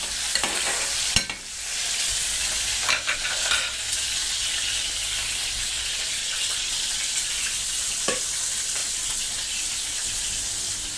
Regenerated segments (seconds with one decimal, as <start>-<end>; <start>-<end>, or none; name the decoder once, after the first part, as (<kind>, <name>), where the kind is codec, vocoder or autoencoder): 6.2-6.7 (vocoder, WaveNeXt)